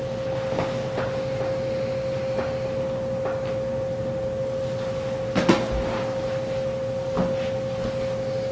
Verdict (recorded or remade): recorded